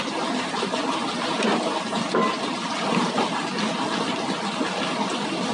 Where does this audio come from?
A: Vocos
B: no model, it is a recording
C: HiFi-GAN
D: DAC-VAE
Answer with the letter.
B